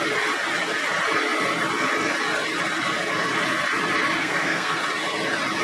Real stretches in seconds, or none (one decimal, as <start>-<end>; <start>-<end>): 0.0-4.2; 4.8-5.6

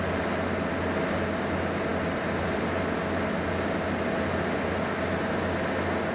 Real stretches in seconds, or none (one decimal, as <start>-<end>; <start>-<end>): 0.0-6.1

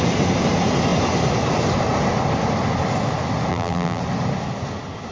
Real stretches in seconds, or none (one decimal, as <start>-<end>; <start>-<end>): 0.0-3.5; 4.0-5.1

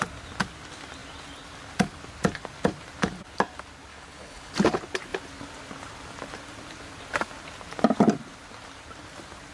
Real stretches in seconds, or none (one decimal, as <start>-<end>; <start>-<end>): 0.0-3.9; 4.5-9.5